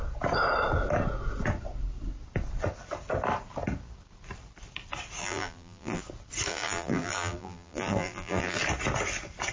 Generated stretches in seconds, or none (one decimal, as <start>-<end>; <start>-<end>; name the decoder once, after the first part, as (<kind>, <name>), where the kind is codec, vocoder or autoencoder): 5.2-6.0 (vocoder, BigVGAN v2); 6.5-8.6